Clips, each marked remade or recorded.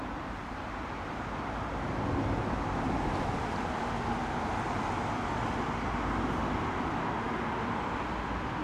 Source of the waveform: recorded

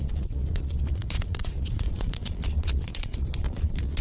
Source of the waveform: remade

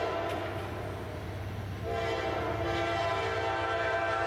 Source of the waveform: recorded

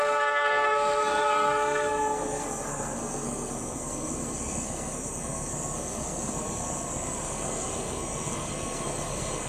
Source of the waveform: remade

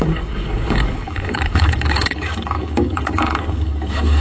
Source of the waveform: remade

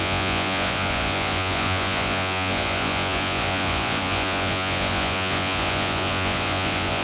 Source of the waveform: remade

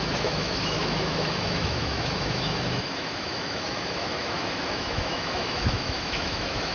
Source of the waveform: remade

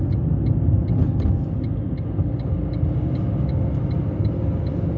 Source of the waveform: recorded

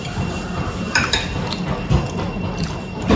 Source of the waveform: recorded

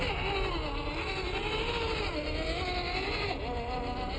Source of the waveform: recorded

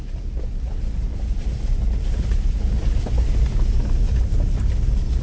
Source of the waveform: recorded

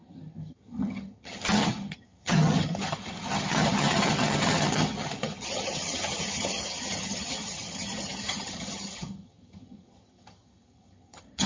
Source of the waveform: remade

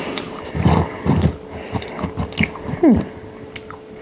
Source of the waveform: recorded